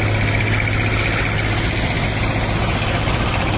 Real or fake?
real